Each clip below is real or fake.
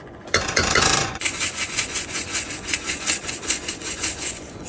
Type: fake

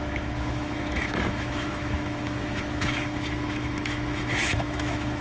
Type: fake